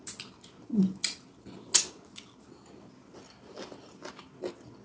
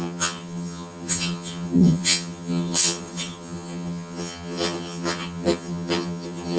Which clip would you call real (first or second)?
first